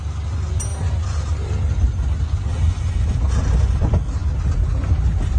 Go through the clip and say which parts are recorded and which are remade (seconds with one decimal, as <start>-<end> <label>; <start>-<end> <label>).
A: 0.0-5.4 recorded